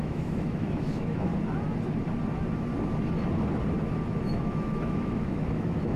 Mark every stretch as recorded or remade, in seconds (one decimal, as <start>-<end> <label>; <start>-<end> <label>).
0.0-1.3 remade; 1.3-4.2 recorded; 4.2-6.0 remade